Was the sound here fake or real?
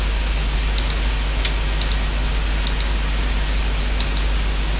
real